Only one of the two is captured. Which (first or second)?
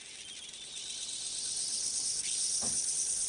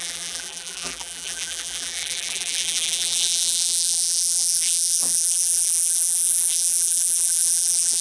first